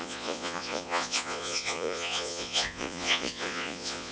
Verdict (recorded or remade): remade